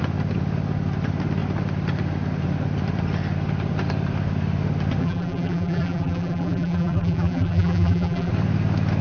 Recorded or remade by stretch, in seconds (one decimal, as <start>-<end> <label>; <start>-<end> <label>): 0.0-5.0 recorded; 5.0-8.3 remade; 8.3-9.0 recorded